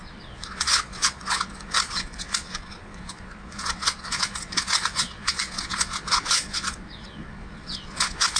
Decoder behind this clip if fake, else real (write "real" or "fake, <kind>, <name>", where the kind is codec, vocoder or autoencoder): fake, vocoder, Vocos